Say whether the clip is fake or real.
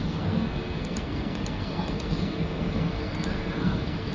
fake